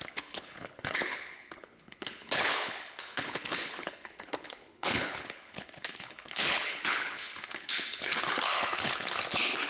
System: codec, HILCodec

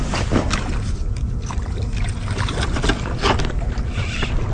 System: none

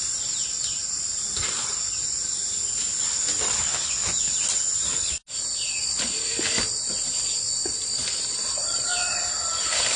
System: none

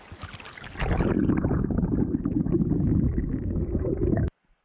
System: none